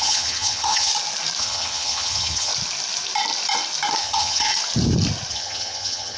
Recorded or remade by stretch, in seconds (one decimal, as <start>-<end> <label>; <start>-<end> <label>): 0.0-0.9 remade; 0.9-1.4 recorded; 1.4-2.5 remade; 2.5-4.0 recorded; 4.0-4.5 remade; 4.5-5.3 recorded; 5.3-6.2 remade